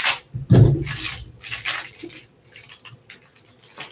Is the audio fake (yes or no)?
no